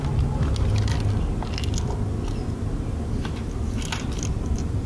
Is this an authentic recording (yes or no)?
yes